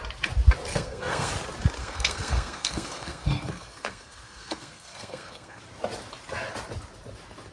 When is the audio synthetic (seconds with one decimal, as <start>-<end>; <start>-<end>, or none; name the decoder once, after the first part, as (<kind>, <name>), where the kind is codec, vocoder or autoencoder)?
0.7-1.3 (codec, SNAC); 1.8-5.6